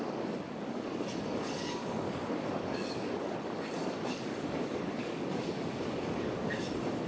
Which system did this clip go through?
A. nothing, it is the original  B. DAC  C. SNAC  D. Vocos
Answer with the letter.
B